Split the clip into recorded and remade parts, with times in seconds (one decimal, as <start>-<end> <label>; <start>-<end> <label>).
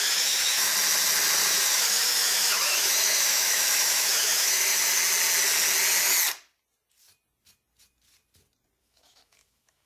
0.0-0.7 remade; 0.7-1.6 recorded; 1.6-4.9 remade; 4.9-8.8 recorded; 8.8-9.9 remade